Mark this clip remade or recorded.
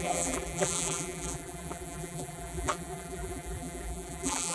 remade